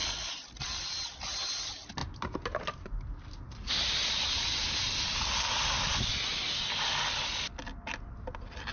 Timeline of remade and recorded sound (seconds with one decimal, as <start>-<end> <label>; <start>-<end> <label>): 0.0-2.0 recorded; 2.0-5.9 remade; 5.9-8.7 recorded